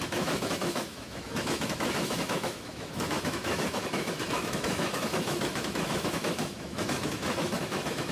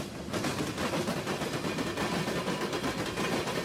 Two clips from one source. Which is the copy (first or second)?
first